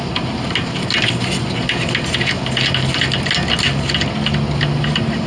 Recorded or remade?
recorded